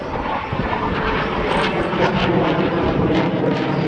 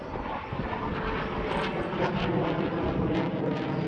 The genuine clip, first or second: second